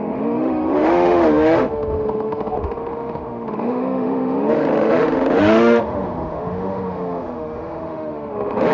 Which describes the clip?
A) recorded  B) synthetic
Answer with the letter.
B